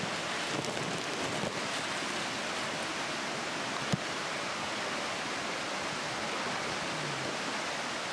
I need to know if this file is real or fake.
real